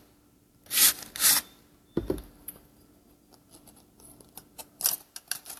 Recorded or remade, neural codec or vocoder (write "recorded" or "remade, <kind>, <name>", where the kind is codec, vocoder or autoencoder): recorded